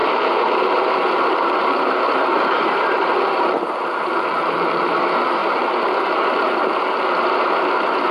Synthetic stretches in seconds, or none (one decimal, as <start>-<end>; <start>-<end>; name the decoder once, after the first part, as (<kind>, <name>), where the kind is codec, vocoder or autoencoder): 0.0-4.9 (vocoder, BigVGAN v2); 5.4-6.7